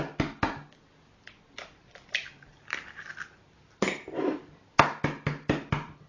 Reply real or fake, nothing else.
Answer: real